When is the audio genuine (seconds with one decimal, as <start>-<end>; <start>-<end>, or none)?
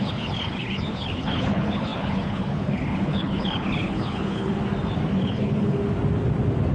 4.5-5.1; 5.8-6.7